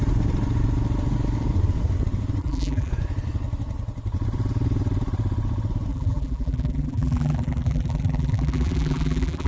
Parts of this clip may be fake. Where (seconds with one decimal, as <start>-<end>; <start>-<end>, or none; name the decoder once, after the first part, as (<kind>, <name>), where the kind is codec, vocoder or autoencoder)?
2.4-2.9 (vocoder, BigVGAN v2); 5.9-9.5